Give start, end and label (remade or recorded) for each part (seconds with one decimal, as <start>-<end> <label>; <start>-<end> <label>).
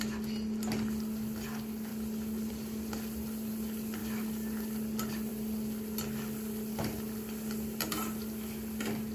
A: 0.0-9.1 recorded